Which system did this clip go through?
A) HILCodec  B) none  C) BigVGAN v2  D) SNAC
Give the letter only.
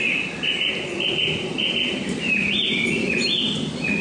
B